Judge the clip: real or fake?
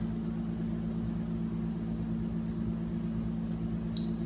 real